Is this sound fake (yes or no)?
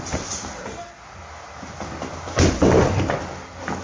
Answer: no